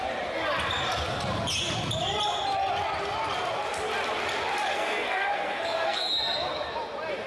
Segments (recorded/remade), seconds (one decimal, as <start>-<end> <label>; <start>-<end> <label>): 0.0-4.7 recorded; 4.7-6.1 remade; 6.1-7.3 recorded